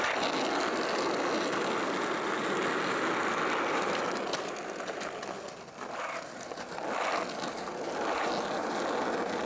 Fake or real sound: real